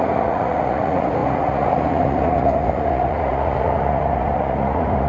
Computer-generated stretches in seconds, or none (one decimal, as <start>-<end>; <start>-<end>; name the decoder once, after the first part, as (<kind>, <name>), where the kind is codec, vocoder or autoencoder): 0.0-5.1 (vocoder, Vocos)